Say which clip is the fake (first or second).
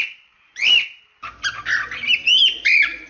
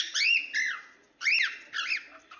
first